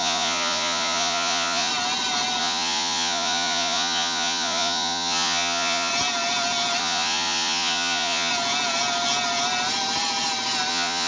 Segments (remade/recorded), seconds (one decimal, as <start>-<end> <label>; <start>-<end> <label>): 0.0-1.7 remade; 1.7-2.4 recorded; 2.4-5.9 remade; 5.9-6.8 recorded; 6.8-8.3 remade; 8.3-10.7 recorded; 10.7-11.1 remade

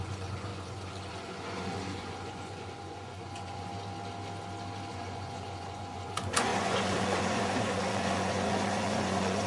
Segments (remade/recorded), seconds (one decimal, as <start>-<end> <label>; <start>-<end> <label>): 0.0-3.7 remade; 3.7-4.9 recorded; 4.9-9.5 remade

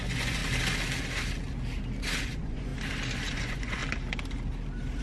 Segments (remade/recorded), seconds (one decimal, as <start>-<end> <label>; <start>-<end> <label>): 0.0-0.4 remade; 0.4-2.2 recorded; 2.2-2.7 remade; 2.7-3.3 recorded; 3.3-3.8 remade; 3.8-5.0 recorded